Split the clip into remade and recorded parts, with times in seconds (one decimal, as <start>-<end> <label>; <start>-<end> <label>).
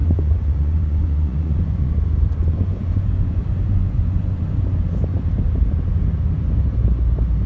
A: 0.0-1.9 remade; 1.9-2.4 recorded; 2.4-4.4 remade; 4.4-7.5 recorded